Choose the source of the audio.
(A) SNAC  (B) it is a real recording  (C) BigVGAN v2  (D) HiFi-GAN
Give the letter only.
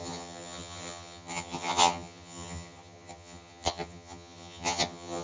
D